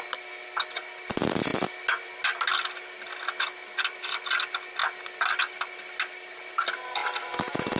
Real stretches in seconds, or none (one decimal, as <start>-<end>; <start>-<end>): 0.0-7.8